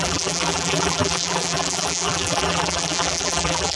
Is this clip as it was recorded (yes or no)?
no